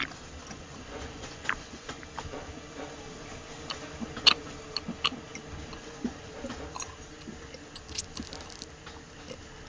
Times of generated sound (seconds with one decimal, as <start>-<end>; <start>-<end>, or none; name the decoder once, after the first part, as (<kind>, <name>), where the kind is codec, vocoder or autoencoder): 0.4-2.0 (vocoder, Vocos); 5.7-6.3